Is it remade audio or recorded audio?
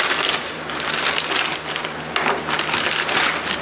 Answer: recorded